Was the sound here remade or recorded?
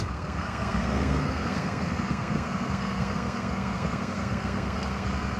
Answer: remade